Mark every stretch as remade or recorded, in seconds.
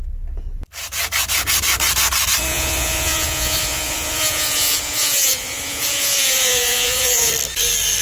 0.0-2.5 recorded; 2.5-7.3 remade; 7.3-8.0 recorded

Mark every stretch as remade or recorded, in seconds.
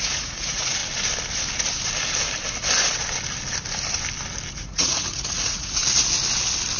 0.0-0.8 remade; 0.8-4.5 recorded; 4.5-5.8 remade; 5.8-6.8 recorded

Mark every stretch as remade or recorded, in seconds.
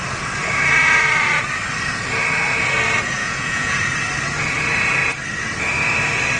0.0-3.2 recorded; 3.2-3.7 remade; 3.7-6.4 recorded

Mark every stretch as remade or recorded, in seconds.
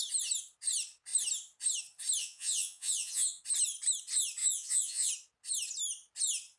0.0-2.2 recorded; 2.2-3.4 remade; 3.4-4.4 recorded; 4.4-5.1 remade; 5.1-6.6 recorded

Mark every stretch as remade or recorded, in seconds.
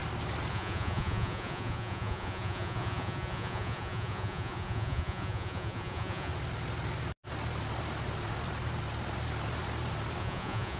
0.0-0.5 recorded; 0.5-6.3 remade; 6.3-10.2 recorded; 10.2-10.8 remade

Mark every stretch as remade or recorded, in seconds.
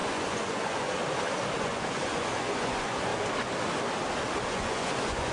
0.0-1.0 remade; 1.0-1.6 recorded; 1.6-3.1 remade; 3.1-4.5 recorded; 4.5-5.3 remade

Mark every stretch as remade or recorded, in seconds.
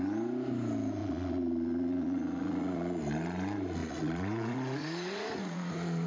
0.0-1.0 recorded; 1.0-3.0 remade; 3.0-3.8 recorded; 3.8-6.1 remade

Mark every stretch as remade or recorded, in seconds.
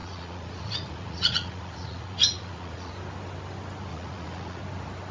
0.0-2.9 remade; 2.9-3.9 recorded; 3.9-4.6 remade; 4.6-5.1 recorded